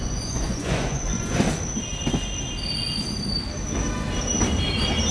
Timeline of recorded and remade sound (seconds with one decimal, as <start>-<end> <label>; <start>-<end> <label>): 0.0-1.3 remade; 1.3-5.1 recorded